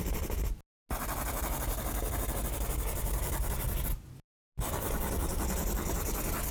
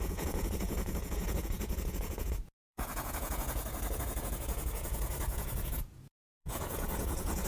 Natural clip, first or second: first